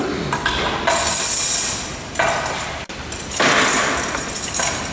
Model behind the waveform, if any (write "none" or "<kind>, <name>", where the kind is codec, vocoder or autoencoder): none